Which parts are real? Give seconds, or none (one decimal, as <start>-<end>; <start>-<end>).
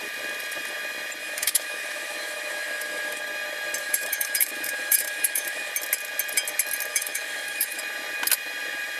0.0-1.2; 3.2-3.8; 5.7-6.9; 7.8-9.0